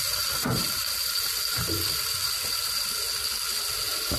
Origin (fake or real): real